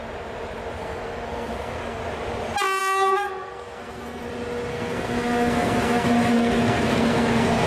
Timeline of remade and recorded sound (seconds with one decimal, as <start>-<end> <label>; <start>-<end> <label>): 0.0-0.8 recorded; 0.8-2.0 remade; 2.0-2.8 recorded; 2.8-4.2 remade; 4.2-4.7 recorded; 4.7-7.7 remade

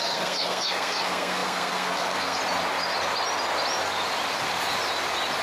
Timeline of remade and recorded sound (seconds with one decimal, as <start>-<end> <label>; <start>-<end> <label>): 0.0-2.4 remade; 2.4-5.4 recorded

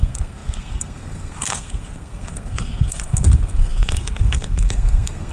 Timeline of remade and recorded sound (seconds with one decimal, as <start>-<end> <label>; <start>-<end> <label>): 0.0-5.3 remade

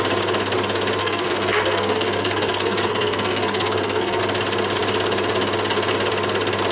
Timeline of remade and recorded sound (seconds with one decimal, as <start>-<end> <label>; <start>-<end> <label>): 0.0-1.0 recorded; 1.0-4.2 remade; 4.2-6.7 recorded

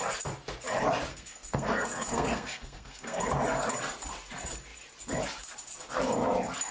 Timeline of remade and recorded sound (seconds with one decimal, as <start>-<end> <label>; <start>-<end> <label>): 0.0-1.1 recorded; 1.1-3.2 remade; 3.2-6.7 recorded

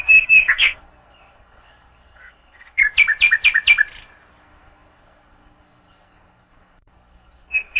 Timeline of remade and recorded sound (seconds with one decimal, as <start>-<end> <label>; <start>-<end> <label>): 0.0-2.8 remade; 2.8-4.4 recorded; 4.4-7.8 remade